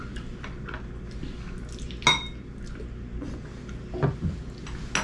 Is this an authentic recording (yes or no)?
yes